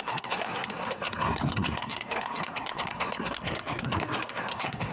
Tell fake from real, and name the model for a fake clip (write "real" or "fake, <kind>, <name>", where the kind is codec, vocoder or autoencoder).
fake, codec, SNAC